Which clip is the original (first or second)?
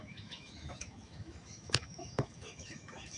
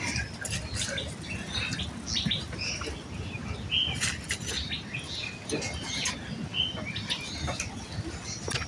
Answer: second